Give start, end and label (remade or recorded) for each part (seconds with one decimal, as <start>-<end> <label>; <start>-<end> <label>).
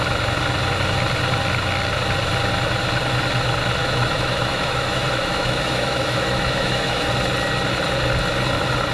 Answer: 0.0-3.8 recorded; 3.8-7.1 remade; 7.1-8.9 recorded